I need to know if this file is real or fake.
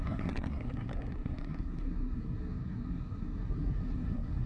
fake